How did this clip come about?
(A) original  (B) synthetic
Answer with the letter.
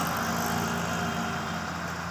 A